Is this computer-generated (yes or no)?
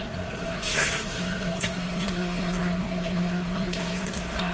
yes